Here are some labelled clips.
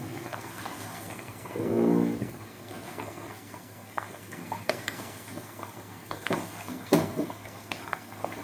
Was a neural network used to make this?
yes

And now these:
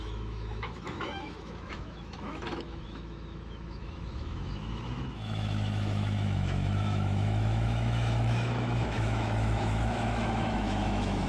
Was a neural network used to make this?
yes